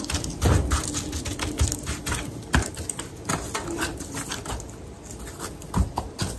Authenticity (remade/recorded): recorded